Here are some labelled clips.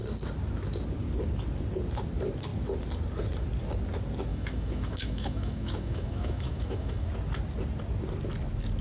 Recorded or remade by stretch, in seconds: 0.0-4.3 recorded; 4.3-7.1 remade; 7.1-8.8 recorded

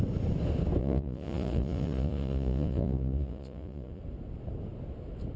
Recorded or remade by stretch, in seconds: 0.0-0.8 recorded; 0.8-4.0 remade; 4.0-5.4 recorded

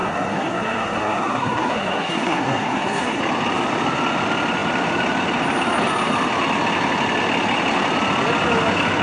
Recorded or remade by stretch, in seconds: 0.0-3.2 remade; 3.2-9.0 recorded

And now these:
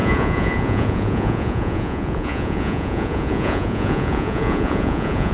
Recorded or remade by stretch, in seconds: 0.0-5.3 remade